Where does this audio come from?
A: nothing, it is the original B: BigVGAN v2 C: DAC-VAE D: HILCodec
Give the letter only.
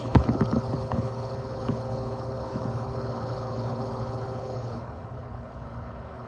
D